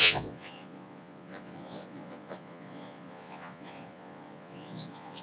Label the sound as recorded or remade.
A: remade